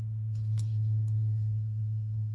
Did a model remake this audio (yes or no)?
yes